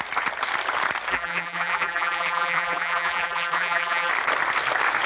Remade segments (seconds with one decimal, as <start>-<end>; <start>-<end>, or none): 1.1-4.1